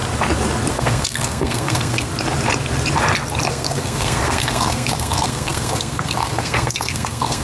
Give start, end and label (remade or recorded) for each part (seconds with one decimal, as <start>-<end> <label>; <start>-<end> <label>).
0.0-0.7 recorded; 0.7-2.1 remade; 2.1-3.5 recorded; 3.5-7.4 remade